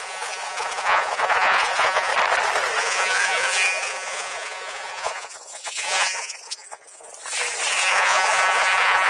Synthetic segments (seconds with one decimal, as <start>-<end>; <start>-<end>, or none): 0.0-2.1; 2.8-7.1; 7.7-9.1